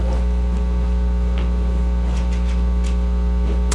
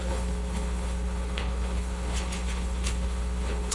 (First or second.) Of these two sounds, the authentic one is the first